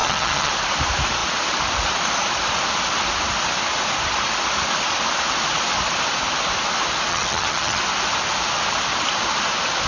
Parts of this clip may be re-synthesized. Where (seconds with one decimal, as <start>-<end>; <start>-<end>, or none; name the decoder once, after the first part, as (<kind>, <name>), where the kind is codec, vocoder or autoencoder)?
0.0-0.5 (vocoder, HiFi-GAN); 7.1-7.8